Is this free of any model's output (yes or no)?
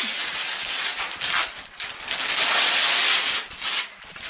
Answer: yes